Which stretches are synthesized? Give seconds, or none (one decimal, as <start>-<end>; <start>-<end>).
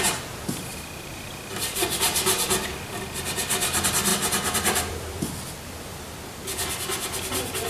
0.7-1.5; 4.1-5.3